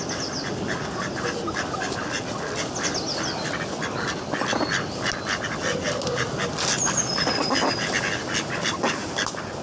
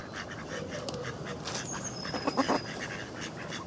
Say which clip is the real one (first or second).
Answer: first